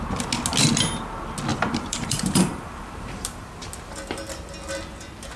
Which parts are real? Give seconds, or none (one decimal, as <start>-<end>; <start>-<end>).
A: 0.0-1.5; 3.5-5.4